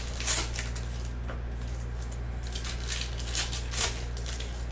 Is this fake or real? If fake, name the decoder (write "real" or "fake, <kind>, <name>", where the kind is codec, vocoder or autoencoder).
real